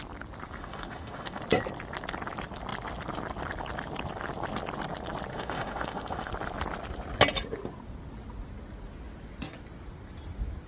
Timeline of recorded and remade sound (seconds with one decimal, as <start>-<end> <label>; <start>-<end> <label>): 0.0-0.6 recorded; 0.6-1.4 remade; 1.4-5.3 recorded; 5.3-6.3 remade; 6.3-10.7 recorded